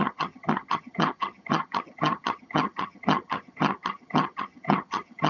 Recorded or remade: remade